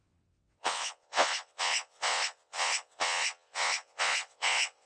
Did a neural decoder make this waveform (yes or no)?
yes